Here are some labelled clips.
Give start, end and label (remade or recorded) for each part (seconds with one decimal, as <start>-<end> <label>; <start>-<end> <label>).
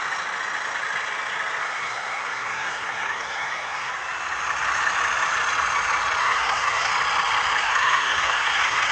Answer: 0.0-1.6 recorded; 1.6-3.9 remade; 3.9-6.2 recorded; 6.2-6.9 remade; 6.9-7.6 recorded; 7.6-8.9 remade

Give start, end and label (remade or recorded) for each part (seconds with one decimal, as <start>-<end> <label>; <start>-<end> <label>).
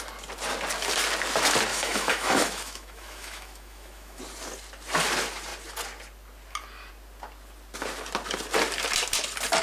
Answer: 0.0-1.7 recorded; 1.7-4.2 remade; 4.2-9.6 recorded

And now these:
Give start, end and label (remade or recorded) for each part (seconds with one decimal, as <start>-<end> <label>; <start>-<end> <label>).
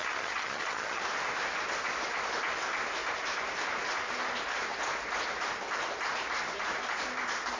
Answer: 0.0-1.0 remade; 1.0-7.6 recorded